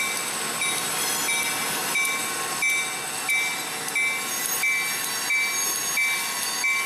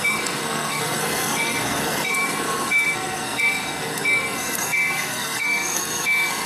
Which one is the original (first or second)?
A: first